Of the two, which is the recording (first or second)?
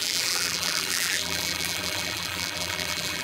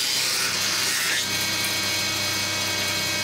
second